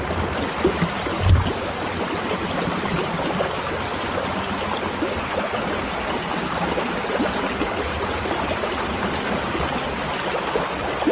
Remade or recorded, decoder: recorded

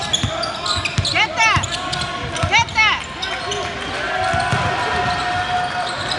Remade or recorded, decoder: recorded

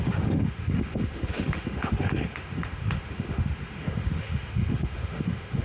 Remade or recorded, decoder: remade, autoencoder, DAC-VAE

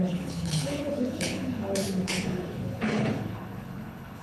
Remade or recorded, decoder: remade, codec, HILCodec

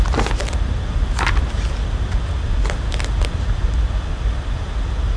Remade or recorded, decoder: recorded